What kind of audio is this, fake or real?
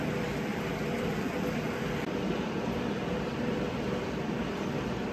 fake